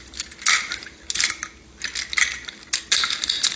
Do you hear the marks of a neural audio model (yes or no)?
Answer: no